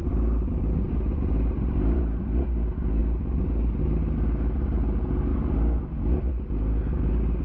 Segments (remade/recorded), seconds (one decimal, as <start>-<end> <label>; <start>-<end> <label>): 0.0-2.0 remade; 2.0-3.0 recorded; 3.0-3.7 remade; 3.7-5.3 recorded; 5.3-6.3 remade; 6.3-7.4 recorded